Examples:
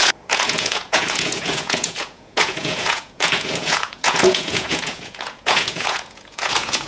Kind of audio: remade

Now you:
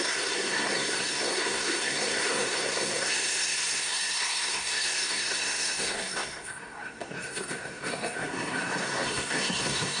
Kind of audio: remade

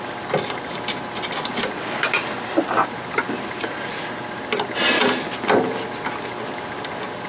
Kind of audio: recorded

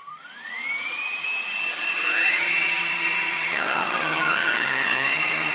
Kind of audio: remade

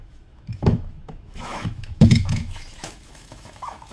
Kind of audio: remade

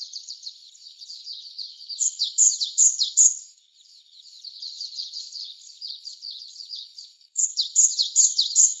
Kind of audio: remade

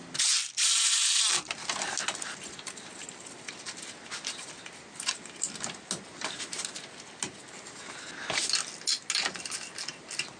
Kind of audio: recorded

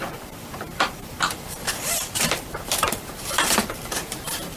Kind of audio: remade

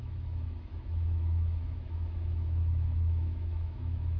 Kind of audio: remade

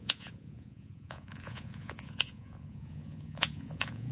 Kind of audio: remade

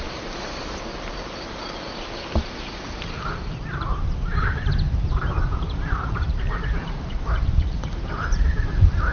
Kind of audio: remade